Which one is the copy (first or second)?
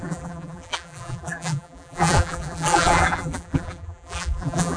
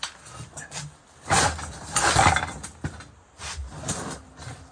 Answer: first